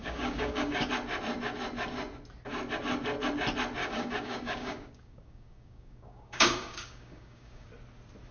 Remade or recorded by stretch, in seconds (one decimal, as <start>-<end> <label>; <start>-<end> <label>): 0.0-0.9 remade; 0.9-3.8 recorded; 3.8-7.7 remade; 7.7-8.3 recorded